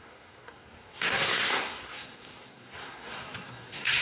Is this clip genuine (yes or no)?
no